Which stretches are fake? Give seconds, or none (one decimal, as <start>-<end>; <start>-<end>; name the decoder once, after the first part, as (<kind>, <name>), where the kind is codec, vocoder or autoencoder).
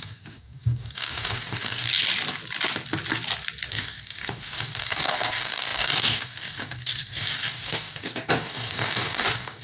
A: 0.0-1.9 (codec, DAC); 3.7-9.6